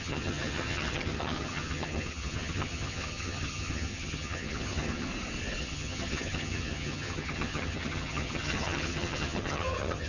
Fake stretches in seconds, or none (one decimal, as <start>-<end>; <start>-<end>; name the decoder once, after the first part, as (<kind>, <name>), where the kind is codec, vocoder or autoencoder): 0.0-5.1 (vocoder, HiFi-GAN); 5.6-10.1